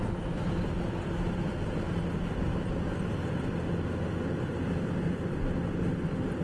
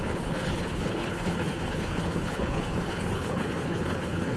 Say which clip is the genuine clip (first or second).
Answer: first